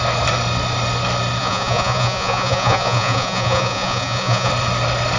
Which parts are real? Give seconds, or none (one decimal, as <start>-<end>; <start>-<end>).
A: 0.0-1.4; 4.5-5.2